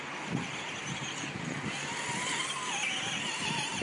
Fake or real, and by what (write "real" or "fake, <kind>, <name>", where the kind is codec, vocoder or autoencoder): real